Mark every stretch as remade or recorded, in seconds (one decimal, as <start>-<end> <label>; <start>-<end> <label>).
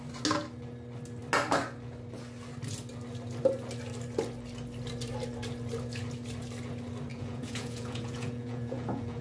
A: 0.0-7.1 recorded; 7.1-9.2 remade